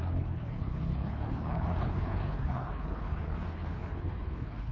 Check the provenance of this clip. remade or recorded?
remade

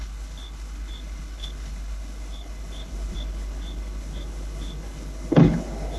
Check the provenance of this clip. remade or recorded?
remade